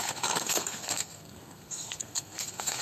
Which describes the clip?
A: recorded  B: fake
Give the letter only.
B